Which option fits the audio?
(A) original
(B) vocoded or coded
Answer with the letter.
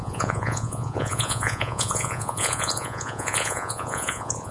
B